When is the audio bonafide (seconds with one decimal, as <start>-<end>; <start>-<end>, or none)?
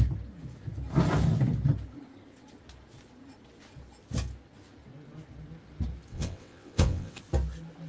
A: 0.0-6.1; 7.2-7.9